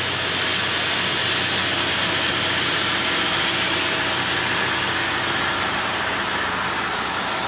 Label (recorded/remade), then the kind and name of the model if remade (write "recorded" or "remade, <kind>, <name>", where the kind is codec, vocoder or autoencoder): recorded